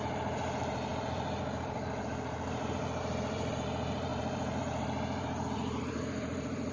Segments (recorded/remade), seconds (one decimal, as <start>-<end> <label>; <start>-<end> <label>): 0.0-6.7 remade